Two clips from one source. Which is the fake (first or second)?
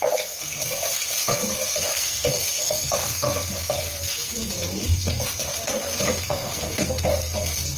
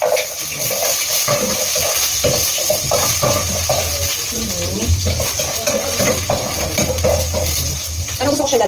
first